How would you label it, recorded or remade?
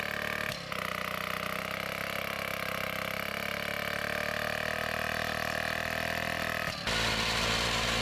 recorded